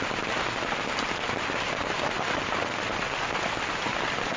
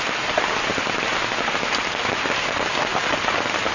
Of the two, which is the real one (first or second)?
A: second